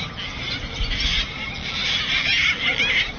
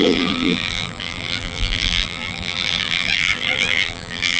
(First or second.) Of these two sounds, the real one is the first